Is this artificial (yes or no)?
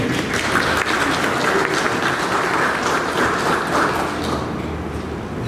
no